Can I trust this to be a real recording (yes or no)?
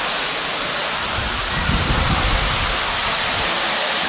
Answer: yes